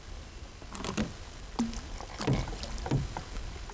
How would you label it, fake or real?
real